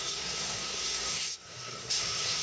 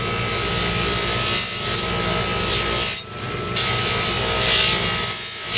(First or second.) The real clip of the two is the second